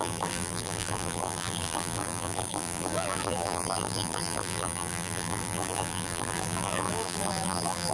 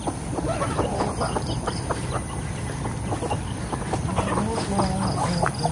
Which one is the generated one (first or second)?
first